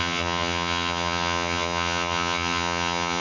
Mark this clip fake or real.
fake